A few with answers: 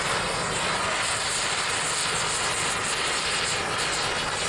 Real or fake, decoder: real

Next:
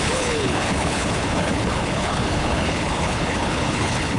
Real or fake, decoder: fake, codec, HILCodec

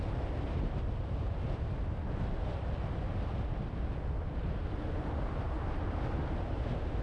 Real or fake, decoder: real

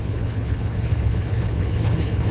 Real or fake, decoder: fake, codec, HILCodec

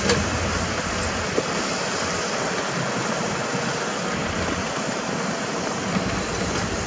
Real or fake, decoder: real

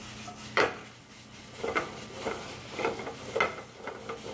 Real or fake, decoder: real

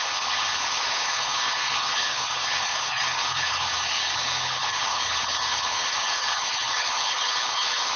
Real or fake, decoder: fake, codec, HILCodec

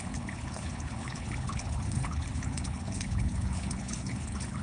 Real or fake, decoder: fake, codec, HILCodec